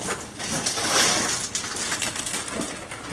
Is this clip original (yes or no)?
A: no